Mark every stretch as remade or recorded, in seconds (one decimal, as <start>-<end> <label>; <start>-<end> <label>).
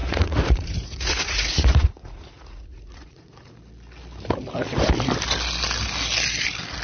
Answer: 0.0-3.5 remade; 3.5-6.8 recorded